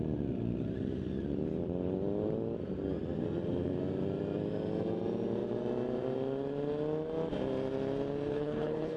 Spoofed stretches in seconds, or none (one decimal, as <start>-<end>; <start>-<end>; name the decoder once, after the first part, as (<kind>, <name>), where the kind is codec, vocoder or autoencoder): 8.3-9.0 (codec, HILCodec)